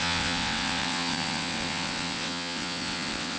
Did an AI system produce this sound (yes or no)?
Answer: yes